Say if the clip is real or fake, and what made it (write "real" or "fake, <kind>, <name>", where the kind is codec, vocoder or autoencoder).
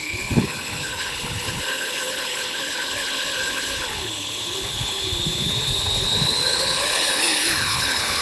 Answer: fake, codec, HILCodec